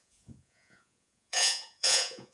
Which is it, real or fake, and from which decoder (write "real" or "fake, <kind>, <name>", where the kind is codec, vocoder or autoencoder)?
fake, vocoder, Vocos